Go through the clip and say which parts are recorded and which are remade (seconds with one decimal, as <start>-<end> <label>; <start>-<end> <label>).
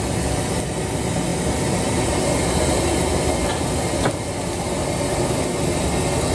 0.0-6.3 recorded